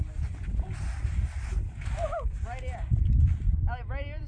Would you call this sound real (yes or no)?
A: yes